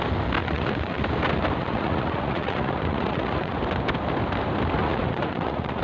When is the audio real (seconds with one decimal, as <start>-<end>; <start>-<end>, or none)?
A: 0.0-0.4; 1.0-1.6; 3.6-4.8